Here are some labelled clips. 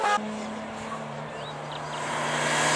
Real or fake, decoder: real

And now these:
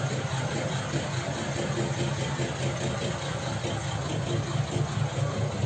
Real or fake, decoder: real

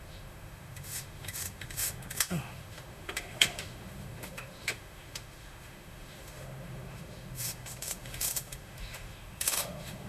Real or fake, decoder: fake, autoencoder, DAC-VAE